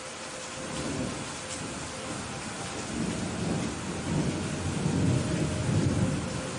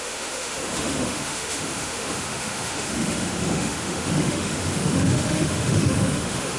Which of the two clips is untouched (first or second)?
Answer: first